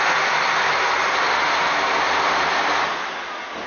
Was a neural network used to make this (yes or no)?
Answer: no